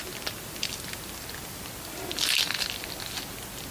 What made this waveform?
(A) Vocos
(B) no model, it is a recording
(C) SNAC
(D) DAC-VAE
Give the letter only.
B